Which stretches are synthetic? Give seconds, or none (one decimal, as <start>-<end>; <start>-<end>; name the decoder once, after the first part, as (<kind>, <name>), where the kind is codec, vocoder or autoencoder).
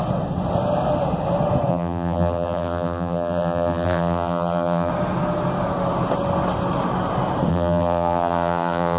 1.7-4.9 (vocoder, BigVGAN v2); 7.5-9.0